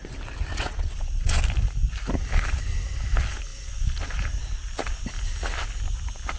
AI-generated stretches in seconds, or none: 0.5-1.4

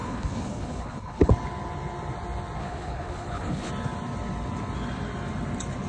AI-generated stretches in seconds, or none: 0.0-1.3; 2.6-3.7

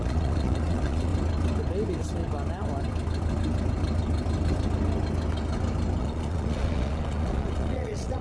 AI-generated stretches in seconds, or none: 0.0-1.1; 6.0-8.2

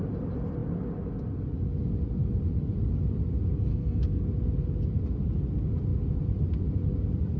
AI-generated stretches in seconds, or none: 3.7-4.2

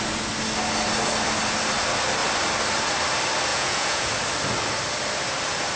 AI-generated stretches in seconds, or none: 3.5-4.1

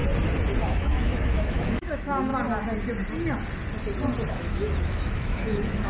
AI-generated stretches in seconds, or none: 0.6-2.3; 4.3-5.9

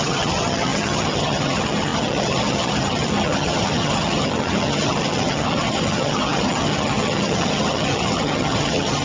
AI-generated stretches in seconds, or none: 0.0-9.0

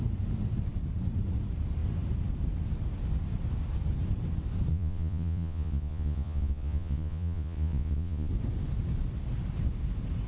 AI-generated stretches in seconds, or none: 4.7-8.3